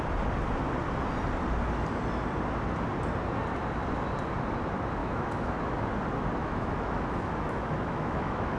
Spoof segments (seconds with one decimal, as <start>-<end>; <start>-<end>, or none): 5.0-5.6; 6.4-8.6